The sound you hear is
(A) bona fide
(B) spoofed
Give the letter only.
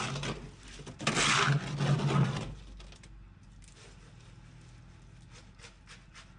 A